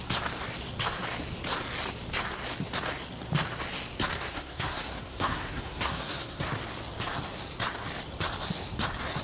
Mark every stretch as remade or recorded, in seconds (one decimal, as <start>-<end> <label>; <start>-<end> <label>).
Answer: 0.0-4.3 recorded; 4.3-6.5 remade; 6.5-9.2 recorded